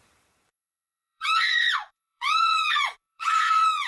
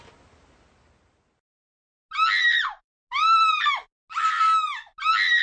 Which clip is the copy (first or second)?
first